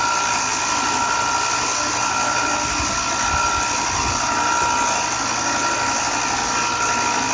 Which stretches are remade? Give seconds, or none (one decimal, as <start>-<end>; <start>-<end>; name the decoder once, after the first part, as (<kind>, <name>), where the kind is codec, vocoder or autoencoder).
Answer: none